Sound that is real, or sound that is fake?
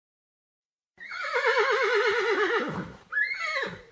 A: real